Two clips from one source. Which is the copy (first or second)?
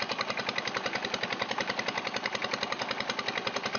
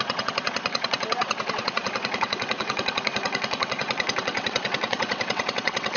second